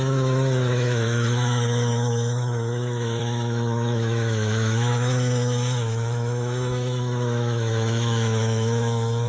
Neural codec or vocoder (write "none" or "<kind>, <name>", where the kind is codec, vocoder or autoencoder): autoencoder, DAC-VAE